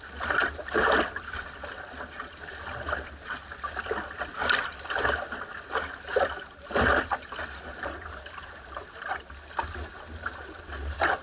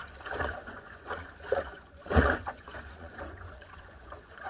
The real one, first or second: first